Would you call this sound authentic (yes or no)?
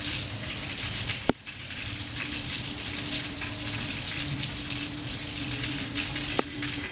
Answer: no